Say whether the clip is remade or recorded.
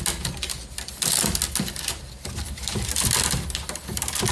recorded